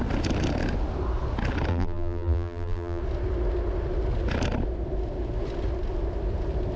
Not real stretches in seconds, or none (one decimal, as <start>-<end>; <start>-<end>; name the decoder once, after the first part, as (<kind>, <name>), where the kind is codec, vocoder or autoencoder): 1.7-3.0 (vocoder, BigVGAN v2)